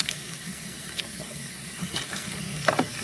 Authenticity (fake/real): fake